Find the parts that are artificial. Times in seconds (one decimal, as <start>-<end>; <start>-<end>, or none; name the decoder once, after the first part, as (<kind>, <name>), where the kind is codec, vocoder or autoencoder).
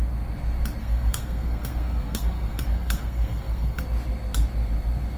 0.8-3.8 (codec, SNAC)